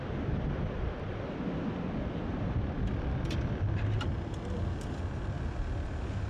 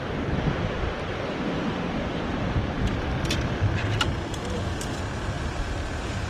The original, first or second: first